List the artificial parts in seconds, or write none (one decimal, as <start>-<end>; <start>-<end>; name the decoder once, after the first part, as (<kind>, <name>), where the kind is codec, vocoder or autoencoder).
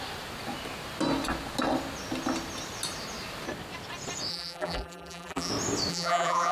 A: 4.3-5.5 (vocoder, BigVGAN v2); 5.9-6.5